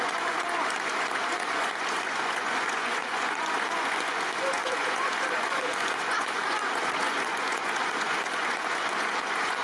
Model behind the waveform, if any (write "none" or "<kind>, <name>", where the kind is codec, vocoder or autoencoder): vocoder, Vocos